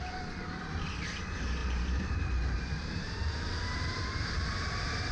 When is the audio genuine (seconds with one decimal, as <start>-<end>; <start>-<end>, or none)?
0.0-1.6